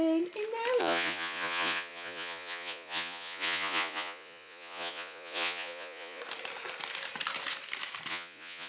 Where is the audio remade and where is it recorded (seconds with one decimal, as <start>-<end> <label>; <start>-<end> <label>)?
0.0-0.8 recorded; 0.8-6.2 remade; 6.2-8.1 recorded; 8.1-8.7 remade